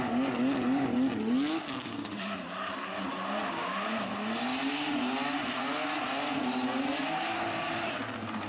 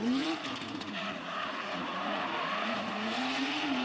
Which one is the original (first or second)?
first